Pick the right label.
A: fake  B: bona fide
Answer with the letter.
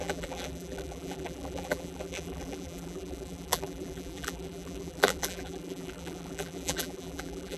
A